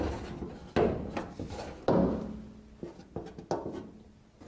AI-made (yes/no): no